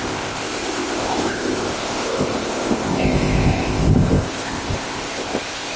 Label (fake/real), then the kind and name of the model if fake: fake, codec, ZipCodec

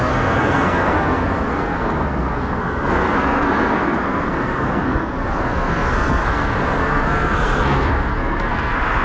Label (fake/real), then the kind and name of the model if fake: fake, codec, SNAC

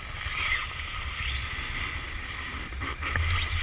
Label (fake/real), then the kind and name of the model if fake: real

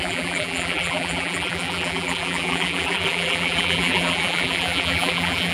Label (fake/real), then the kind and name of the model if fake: fake, vocoder, BigVGAN v2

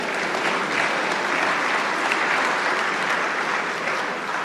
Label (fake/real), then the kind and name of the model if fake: real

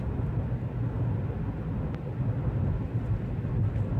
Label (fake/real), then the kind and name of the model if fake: real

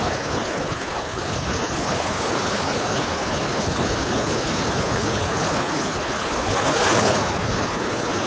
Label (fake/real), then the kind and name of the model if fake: fake, codec, HILCodec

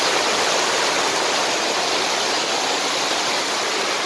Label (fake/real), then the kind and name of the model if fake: real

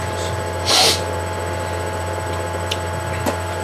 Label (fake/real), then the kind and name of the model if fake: real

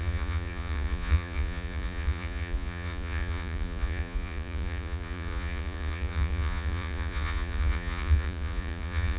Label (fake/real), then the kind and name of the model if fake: fake, vocoder, Vocos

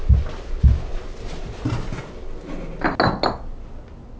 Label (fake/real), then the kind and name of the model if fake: real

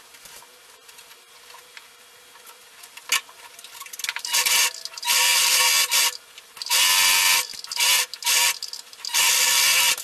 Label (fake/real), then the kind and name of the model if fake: real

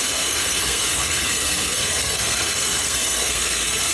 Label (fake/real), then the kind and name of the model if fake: fake, codec, SNAC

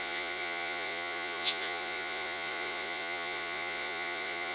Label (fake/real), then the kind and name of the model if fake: fake, vocoder, Vocos